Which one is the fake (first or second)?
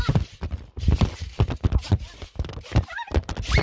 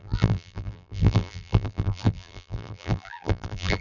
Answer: second